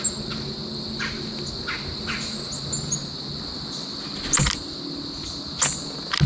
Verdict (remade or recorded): recorded